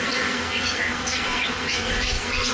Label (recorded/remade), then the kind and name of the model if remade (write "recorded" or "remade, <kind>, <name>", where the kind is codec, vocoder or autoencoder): remade, codec, SNAC